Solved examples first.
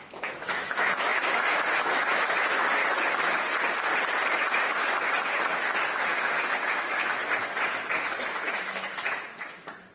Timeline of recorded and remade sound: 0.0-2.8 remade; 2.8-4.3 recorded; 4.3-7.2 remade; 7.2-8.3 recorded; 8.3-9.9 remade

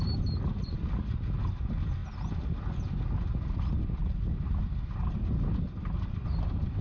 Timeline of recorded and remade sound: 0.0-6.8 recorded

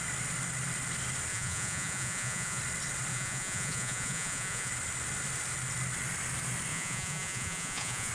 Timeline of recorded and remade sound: 0.0-1.3 recorded; 1.3-2.6 remade; 2.6-3.1 recorded; 3.1-4.7 remade; 4.7-6.7 recorded; 6.7-8.1 remade